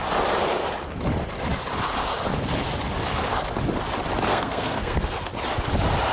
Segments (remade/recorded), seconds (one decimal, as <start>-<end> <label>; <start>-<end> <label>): 0.0-4.3 recorded; 4.3-5.3 remade; 5.3-6.1 recorded

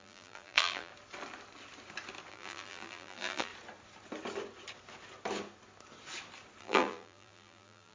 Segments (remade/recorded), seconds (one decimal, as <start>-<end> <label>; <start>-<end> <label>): 0.0-0.9 remade; 0.9-2.3 recorded; 2.3-3.5 remade; 3.5-6.6 recorded; 6.6-7.9 remade

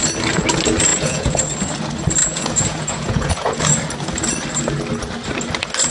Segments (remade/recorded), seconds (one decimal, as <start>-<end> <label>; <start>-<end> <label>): 0.0-0.9 recorded; 0.9-1.4 remade; 1.4-2.2 recorded; 2.2-3.6 remade; 3.6-5.9 recorded

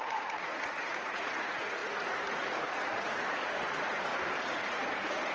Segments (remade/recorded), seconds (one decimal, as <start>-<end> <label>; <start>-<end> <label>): 0.0-4.1 remade; 4.1-4.7 recorded; 4.7-5.3 remade

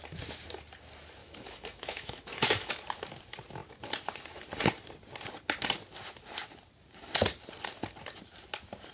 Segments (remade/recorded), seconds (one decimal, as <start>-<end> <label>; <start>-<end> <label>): 0.0-1.2 recorded; 1.2-2.7 remade; 2.7-8.9 recorded

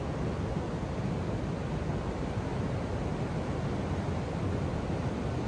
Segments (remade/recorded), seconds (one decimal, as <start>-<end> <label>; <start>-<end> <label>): 0.0-4.7 recorded; 4.7-5.5 remade

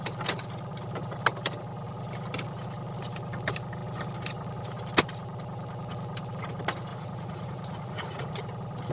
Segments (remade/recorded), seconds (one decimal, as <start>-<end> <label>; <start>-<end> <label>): 0.0-6.9 recorded; 6.9-8.3 remade; 8.3-8.9 recorded

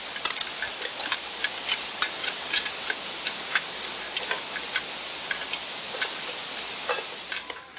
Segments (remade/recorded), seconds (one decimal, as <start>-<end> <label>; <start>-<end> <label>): 0.0-2.2 recorded; 2.2-2.9 remade; 2.9-7.8 recorded